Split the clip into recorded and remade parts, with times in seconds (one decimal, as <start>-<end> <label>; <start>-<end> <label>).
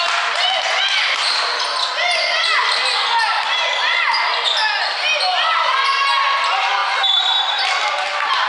0.0-8.5 recorded